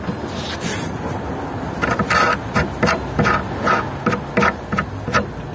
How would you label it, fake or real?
real